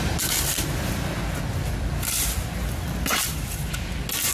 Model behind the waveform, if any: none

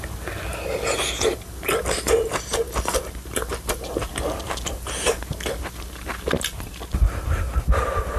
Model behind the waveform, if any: none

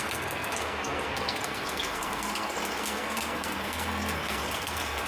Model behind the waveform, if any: codec, SNAC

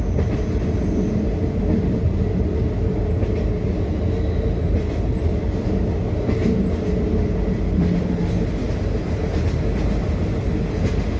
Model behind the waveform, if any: none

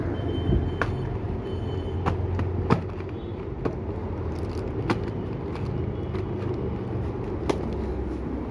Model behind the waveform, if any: none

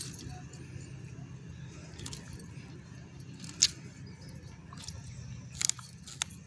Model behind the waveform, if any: none